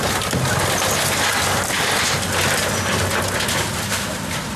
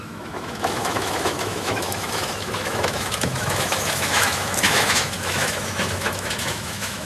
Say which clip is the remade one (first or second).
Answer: second